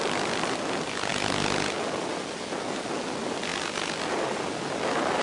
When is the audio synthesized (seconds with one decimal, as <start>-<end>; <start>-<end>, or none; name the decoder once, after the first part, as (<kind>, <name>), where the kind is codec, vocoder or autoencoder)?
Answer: none